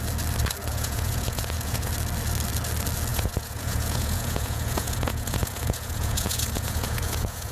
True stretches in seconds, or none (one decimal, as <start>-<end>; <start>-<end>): 0.0-0.7; 1.9-3.1